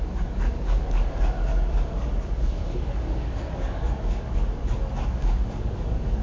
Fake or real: fake